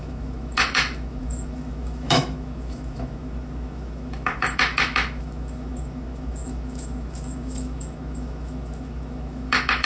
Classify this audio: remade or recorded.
remade